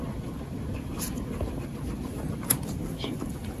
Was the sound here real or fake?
real